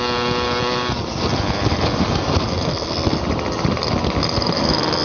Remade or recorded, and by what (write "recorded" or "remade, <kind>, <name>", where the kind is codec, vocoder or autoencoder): recorded